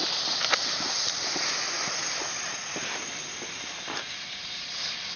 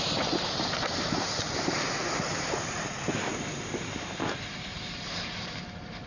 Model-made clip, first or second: second